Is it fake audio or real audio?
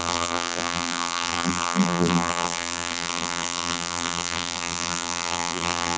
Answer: fake